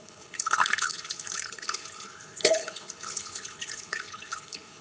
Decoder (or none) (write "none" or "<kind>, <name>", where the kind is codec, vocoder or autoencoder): codec, HILCodec